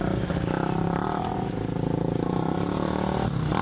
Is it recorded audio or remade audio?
recorded